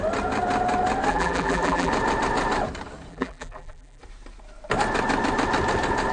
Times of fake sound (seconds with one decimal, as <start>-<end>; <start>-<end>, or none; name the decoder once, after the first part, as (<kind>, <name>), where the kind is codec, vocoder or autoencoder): 1.1-1.9 (vocoder, BigVGAN v2); 3.1-4.0